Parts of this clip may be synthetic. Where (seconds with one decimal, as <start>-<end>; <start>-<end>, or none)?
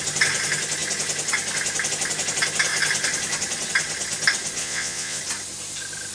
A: 4.6-5.2